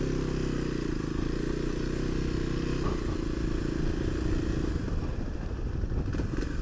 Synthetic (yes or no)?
no